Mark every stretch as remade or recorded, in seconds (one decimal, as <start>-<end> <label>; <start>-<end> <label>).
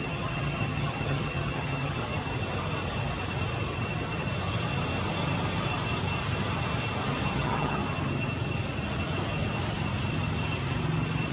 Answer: 0.0-2.0 remade; 2.0-7.3 recorded; 7.3-7.8 remade; 7.8-11.3 recorded